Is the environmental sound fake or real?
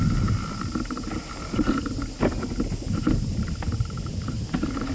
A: real